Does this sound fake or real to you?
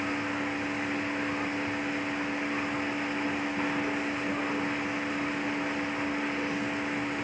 real